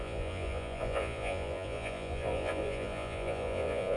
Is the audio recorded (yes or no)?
no